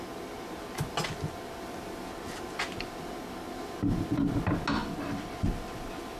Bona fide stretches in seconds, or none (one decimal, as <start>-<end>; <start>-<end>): 0.0-6.2